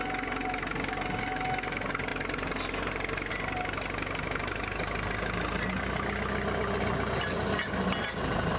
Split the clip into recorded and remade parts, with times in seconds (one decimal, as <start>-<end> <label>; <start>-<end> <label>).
0.0-8.6 recorded